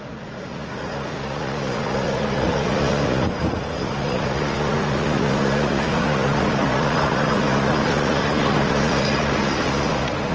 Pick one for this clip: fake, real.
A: fake